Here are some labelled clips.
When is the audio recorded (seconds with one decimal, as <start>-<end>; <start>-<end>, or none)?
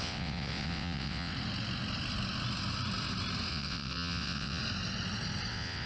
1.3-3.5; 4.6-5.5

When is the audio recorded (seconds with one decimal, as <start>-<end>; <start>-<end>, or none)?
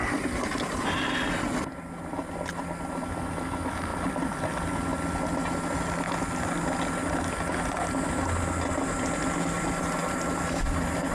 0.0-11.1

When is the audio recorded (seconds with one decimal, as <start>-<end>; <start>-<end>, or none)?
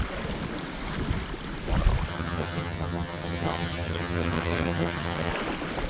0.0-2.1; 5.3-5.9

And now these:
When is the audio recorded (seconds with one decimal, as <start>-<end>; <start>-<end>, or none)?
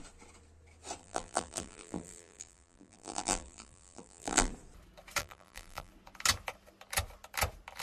0.0-1.0; 4.5-5.2; 5.9-7.8